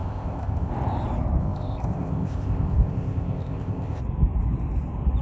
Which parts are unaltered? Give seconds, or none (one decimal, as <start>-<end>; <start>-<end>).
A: 0.7-1.4; 4.0-5.2